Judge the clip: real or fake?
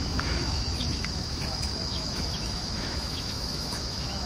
fake